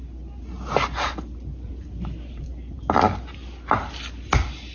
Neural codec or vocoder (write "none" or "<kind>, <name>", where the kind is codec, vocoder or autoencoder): none